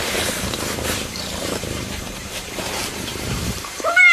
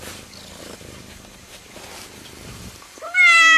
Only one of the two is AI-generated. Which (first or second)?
first